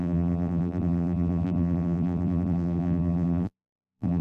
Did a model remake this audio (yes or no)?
yes